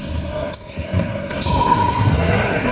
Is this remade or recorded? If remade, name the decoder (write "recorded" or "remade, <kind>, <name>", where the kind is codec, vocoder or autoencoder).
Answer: remade, codec, SNAC